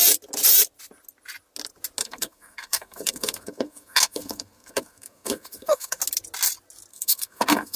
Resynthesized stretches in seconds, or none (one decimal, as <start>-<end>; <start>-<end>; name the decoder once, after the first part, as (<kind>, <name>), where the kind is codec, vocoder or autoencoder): 2.0-6.0 (codec, SNAC); 6.9-7.8